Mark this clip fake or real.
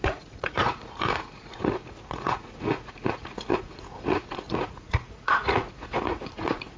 fake